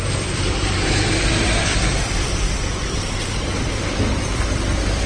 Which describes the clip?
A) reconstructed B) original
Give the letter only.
A